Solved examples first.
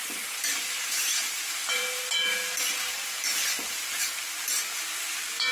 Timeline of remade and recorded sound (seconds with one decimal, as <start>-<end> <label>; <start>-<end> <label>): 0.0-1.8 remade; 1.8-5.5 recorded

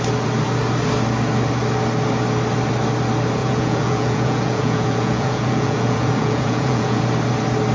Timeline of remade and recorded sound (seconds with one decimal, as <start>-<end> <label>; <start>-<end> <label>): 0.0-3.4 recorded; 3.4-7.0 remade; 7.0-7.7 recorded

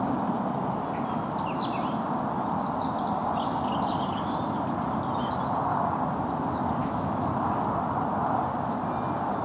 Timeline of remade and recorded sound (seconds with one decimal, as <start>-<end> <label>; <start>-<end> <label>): 0.0-6.8 recorded; 6.8-7.3 remade; 7.3-9.4 recorded

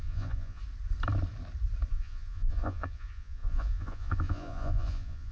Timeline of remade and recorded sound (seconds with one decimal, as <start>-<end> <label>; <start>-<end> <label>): 0.0-0.6 remade; 0.6-1.9 recorded; 1.9-5.3 remade

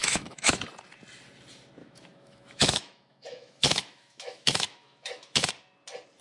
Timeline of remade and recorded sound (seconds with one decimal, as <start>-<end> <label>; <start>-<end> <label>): 0.0-0.6 remade; 0.6-1.8 recorded; 1.8-5.5 remade; 5.5-6.2 recorded